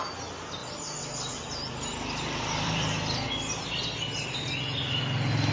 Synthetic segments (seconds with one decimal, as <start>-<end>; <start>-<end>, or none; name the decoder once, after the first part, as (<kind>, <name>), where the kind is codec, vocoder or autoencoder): 0.6-1.3 (vocoder, BigVGAN v2); 1.9-3.3